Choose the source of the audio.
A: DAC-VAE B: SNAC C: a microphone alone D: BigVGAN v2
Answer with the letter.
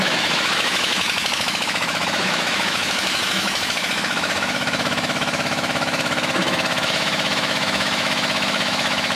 A